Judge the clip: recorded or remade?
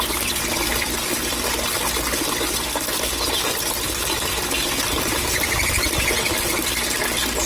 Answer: remade